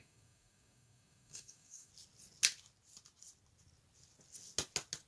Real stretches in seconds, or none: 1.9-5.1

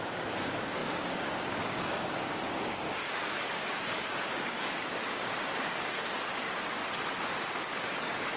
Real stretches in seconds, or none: 6.8-7.8

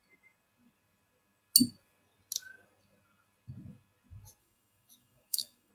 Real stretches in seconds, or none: 0.0-4.4

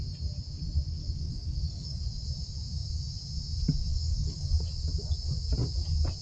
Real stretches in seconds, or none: 0.0-1.0; 2.0-3.9; 4.6-6.2

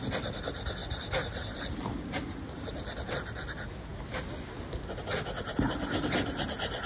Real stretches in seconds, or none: 0.0-6.9